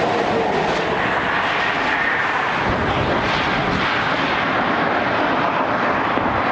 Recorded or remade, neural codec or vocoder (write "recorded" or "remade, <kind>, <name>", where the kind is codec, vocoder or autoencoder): recorded